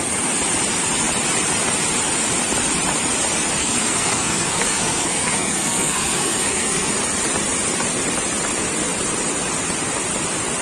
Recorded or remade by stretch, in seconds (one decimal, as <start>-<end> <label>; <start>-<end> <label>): 0.0-3.6 recorded; 3.6-6.9 remade; 6.9-10.6 recorded